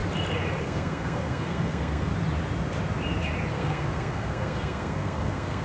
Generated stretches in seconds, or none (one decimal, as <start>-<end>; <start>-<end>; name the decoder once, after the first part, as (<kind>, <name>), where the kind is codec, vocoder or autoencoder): 0.6-2.1 (codec, SNAC); 3.5-5.6